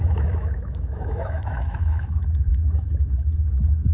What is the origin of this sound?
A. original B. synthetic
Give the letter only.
B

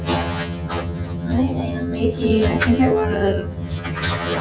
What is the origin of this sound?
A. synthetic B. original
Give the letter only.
A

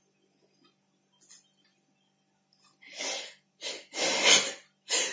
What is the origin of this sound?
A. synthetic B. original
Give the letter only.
B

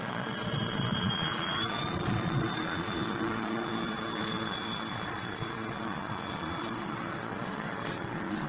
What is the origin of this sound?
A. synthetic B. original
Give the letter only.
A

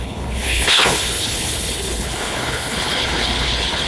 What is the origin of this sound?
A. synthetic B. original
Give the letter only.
A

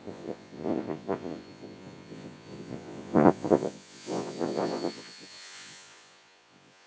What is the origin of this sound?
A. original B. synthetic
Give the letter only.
B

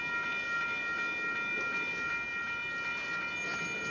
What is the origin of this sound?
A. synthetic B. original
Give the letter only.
B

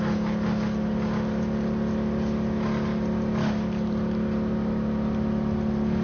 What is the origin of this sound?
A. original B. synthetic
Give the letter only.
A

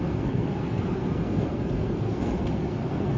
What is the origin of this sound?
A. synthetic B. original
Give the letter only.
A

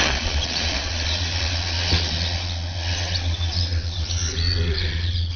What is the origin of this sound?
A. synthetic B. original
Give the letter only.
A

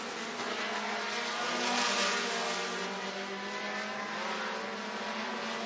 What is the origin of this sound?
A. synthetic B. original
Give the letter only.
B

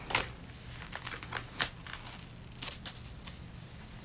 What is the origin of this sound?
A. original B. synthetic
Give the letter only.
A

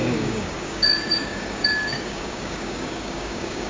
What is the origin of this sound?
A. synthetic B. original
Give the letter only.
A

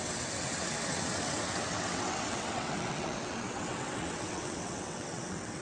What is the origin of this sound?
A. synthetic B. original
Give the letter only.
A